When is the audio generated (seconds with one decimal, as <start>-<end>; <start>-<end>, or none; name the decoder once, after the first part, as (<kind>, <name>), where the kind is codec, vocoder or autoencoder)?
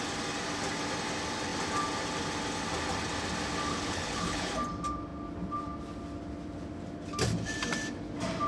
3.7-4.5 (codec, HILCodec)